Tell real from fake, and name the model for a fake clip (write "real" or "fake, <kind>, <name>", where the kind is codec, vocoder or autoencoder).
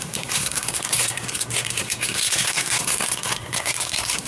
fake, codec, SNAC